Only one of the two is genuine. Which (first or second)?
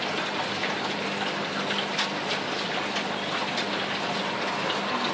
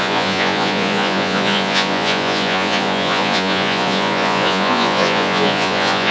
first